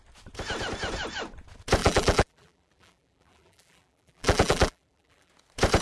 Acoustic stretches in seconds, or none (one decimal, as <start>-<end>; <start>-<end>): 0.0-1.8; 5.3-5.8